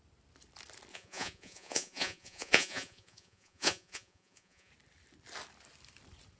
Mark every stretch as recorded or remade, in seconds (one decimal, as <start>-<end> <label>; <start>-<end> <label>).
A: 0.0-0.9 recorded; 0.9-4.7 remade; 4.7-6.4 recorded

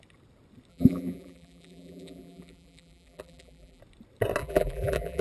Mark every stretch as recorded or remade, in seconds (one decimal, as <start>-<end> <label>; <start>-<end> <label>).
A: 0.0-0.7 recorded; 0.7-3.8 remade; 3.8-4.4 recorded; 4.4-5.2 remade

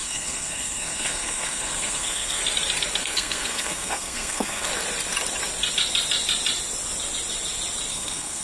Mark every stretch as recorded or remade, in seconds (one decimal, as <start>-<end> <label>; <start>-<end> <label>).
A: 0.0-2.4 remade; 2.4-3.0 recorded; 3.0-4.7 remade; 4.7-7.9 recorded; 7.9-8.4 remade